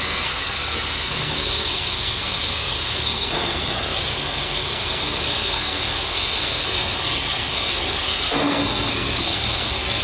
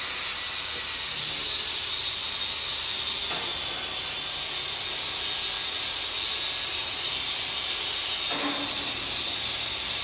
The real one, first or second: second